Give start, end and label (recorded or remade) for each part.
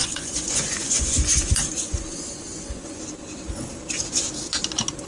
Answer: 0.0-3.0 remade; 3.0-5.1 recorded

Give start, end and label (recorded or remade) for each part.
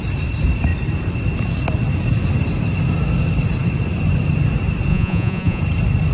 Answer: 0.0-4.9 recorded; 4.9-5.6 remade; 5.6-6.1 recorded